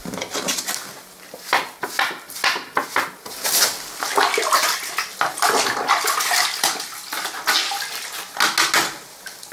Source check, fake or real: real